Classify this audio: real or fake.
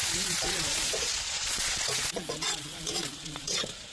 fake